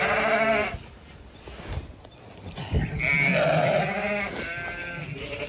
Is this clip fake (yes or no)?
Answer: no